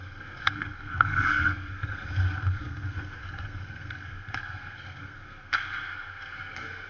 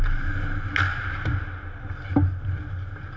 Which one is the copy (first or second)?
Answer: first